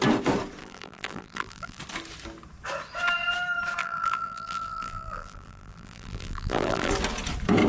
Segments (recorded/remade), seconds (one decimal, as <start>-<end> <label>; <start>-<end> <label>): 0.0-0.6 recorded; 0.6-1.8 remade; 1.8-3.8 recorded; 3.8-6.9 remade; 6.9-7.7 recorded